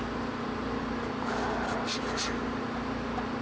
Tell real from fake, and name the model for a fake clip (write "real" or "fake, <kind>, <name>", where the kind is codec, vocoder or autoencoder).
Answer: real